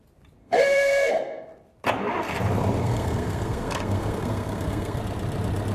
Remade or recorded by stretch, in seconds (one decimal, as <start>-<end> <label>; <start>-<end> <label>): 0.0-0.4 recorded; 0.4-1.1 remade; 1.1-2.8 recorded; 2.8-5.0 remade; 5.0-5.7 recorded